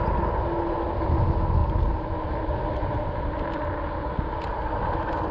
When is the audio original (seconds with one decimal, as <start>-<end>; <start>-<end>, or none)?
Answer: 0.0-5.3

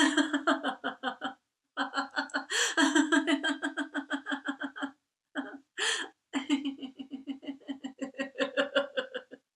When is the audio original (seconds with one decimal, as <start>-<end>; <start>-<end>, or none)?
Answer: 0.0-1.7; 4.5-9.6

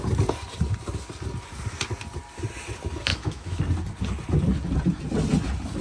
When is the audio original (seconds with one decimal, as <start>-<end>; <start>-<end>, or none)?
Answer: 0.0-3.1; 3.6-5.8

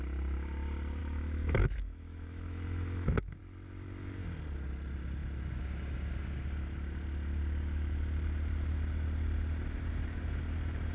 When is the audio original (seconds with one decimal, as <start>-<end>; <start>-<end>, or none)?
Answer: 0.0-1.0; 3.4-10.9

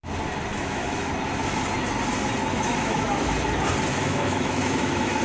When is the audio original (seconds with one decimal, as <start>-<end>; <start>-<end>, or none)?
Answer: 0.0-0.5; 1.1-2.5; 3.3-3.9

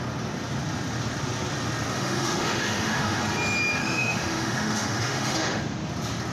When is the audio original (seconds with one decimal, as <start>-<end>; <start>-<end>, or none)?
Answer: 0.0-1.9; 3.2-3.8; 5.6-6.3